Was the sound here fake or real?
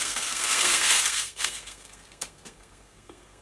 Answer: fake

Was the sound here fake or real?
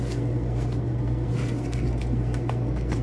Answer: fake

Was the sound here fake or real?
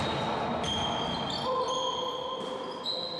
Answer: real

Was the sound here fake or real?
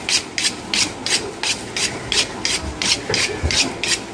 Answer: real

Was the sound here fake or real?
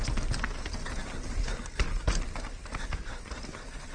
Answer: real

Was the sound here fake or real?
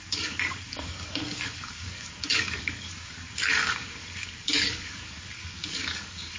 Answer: fake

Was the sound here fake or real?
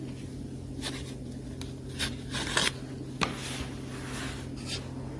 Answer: real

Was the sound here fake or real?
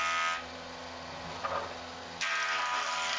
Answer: real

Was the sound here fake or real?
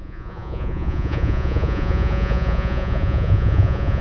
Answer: fake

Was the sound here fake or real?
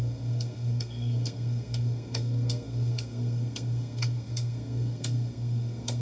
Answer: fake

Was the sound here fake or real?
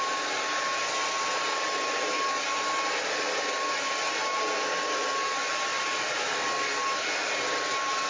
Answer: real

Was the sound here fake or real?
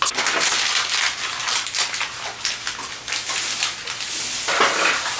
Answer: real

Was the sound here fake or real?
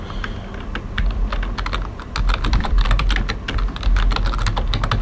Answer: real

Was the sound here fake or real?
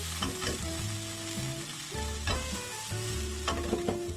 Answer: real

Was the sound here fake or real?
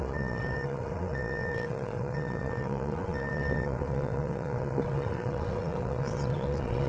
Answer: fake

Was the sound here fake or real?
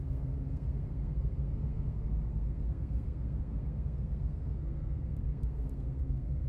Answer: fake